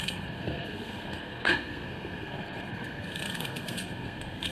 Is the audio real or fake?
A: fake